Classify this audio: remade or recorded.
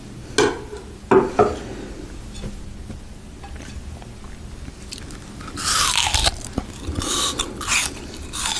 recorded